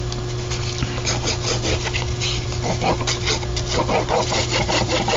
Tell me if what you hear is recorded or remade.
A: recorded